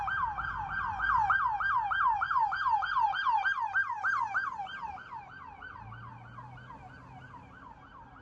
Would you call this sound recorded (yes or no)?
yes